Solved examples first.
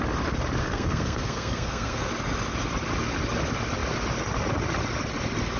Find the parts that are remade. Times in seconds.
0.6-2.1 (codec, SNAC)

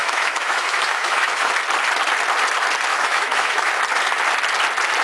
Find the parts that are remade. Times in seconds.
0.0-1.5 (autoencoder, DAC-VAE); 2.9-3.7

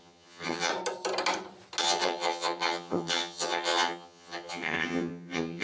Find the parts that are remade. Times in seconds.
0.0-0.7 (vocoder, HiFi-GAN); 1.8-5.6

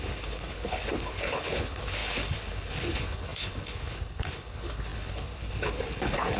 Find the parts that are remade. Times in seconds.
0.0-6.4 (codec, HILCodec)